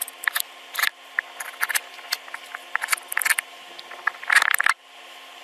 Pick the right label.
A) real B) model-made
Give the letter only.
A